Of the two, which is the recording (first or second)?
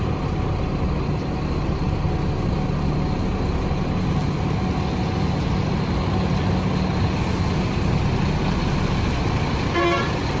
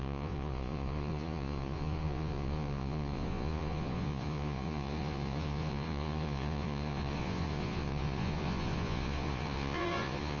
first